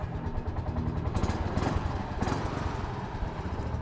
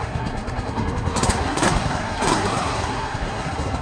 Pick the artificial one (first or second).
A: second